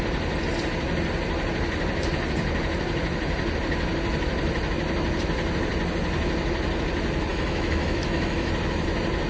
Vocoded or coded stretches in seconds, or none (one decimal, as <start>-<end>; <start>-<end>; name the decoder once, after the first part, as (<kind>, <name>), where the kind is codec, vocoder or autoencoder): 7.3-8.5 (autoencoder, DAC-VAE)